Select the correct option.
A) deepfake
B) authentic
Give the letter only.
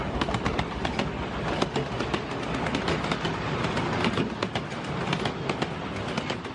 B